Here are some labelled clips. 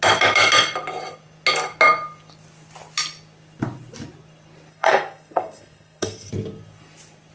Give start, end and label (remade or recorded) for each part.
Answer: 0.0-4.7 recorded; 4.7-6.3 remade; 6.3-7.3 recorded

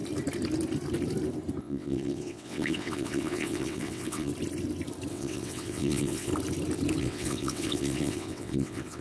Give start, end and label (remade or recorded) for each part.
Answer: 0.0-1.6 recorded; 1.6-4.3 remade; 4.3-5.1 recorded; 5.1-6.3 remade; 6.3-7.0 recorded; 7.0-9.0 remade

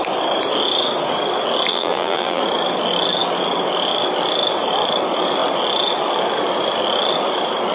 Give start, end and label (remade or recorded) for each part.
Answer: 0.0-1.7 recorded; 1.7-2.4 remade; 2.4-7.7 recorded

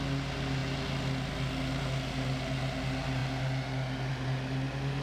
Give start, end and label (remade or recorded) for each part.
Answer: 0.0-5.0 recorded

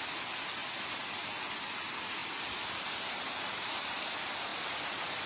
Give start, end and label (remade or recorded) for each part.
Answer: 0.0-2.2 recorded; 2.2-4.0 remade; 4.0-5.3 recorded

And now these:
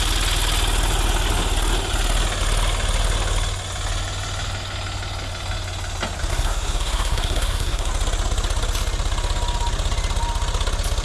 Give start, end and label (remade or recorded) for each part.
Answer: 0.0-6.3 recorded; 6.3-7.9 remade; 7.9-11.0 recorded

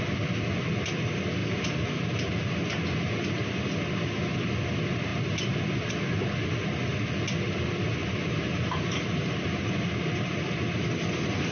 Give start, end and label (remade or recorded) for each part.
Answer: 0.0-1.4 recorded; 1.4-2.3 remade; 2.3-8.0 recorded; 8.0-10.6 remade; 10.6-11.5 recorded